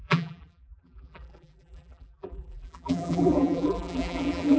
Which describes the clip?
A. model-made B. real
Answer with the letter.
A